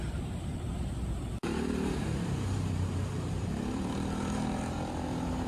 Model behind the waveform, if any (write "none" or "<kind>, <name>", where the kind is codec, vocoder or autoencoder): vocoder, BigVGAN v2